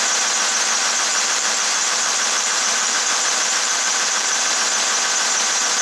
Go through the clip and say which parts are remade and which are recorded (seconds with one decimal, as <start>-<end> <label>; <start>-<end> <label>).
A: 0.0-1.1 recorded; 1.1-4.6 remade; 4.6-5.8 recorded